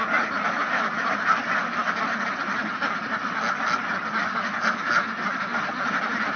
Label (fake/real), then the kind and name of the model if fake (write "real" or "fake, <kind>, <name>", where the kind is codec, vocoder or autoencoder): real